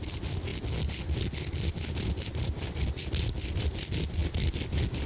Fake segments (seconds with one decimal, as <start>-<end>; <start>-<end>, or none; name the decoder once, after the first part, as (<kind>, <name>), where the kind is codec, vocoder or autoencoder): none